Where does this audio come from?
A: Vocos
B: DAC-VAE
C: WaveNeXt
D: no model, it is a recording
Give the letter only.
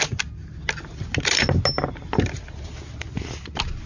D